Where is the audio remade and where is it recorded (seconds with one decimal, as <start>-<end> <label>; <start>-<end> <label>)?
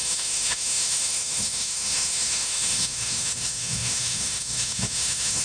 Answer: 0.0-5.4 remade